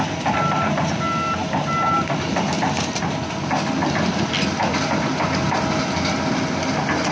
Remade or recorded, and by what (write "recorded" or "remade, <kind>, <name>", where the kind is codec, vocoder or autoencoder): recorded